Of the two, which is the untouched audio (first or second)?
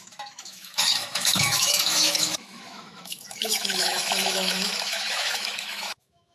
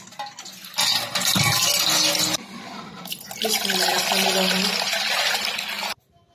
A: second